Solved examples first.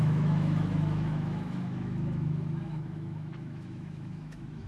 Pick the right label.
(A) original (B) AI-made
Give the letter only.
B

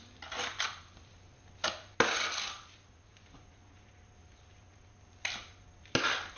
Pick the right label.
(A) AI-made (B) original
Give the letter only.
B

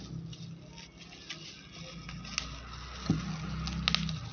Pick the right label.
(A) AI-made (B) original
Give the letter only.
B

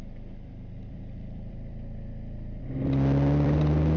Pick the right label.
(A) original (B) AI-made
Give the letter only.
B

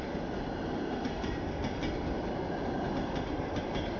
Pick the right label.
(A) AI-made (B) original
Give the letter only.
B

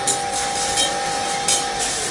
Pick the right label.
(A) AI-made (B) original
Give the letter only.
B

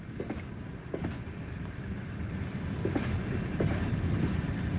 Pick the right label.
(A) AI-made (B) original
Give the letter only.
B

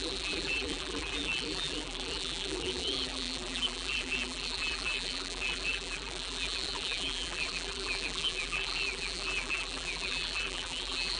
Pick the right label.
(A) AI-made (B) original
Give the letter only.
A